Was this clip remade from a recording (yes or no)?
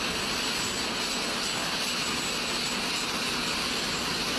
no